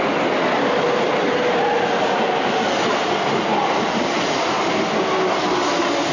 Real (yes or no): yes